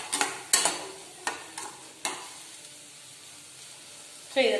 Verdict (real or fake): real